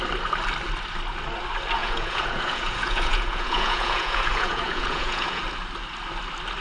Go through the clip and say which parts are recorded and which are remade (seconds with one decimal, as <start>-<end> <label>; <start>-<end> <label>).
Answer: 0.0-1.8 recorded; 1.8-5.4 remade; 5.4-6.6 recorded